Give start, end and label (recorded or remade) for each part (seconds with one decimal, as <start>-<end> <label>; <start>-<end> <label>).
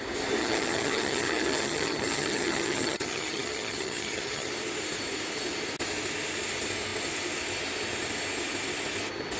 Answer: 0.0-0.4 recorded; 0.4-4.5 remade; 4.5-9.4 recorded